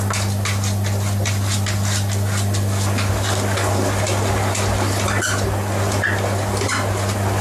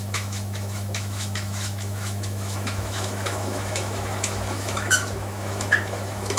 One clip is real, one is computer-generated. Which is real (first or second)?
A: first